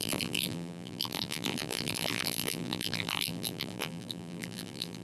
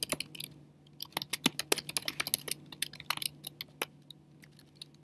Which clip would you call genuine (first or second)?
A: second